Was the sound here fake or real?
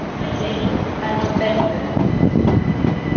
real